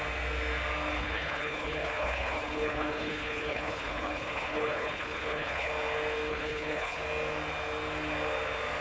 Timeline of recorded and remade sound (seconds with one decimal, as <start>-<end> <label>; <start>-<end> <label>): 0.0-1.0 recorded; 1.0-5.7 remade; 5.7-6.3 recorded; 6.3-7.0 remade; 7.0-8.8 recorded